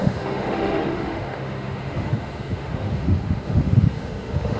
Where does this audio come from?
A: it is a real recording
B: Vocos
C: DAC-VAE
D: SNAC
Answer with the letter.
C